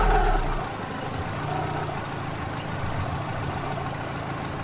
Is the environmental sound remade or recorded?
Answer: recorded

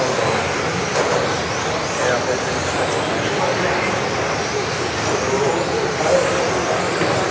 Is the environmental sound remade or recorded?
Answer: recorded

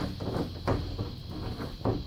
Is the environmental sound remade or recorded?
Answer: recorded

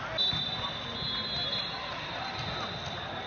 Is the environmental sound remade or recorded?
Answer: recorded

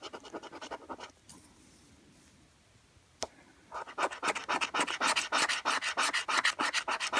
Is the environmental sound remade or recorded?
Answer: recorded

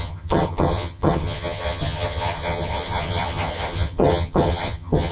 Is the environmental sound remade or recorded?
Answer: remade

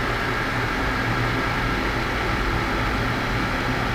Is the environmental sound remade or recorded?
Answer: recorded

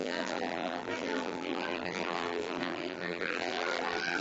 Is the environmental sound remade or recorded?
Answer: remade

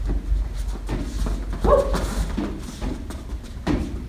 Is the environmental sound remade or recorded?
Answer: recorded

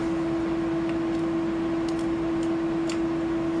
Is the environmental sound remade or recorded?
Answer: recorded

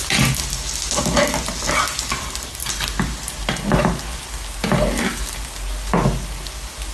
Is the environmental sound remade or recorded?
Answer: recorded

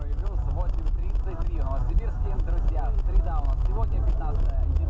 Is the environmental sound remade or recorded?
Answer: recorded